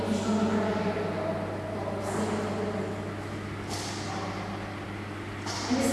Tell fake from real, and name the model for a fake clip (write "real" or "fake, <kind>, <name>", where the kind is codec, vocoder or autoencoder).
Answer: real